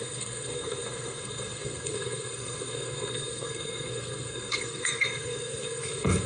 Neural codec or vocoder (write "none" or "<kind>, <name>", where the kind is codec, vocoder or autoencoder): codec, SNAC